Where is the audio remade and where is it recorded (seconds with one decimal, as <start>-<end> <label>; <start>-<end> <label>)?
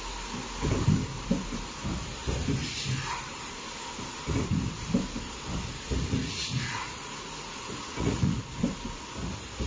0.0-6.2 recorded; 6.2-8.4 remade; 8.4-9.7 recorded